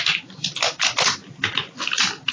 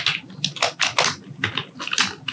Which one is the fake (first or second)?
first